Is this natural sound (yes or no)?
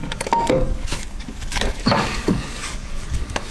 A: no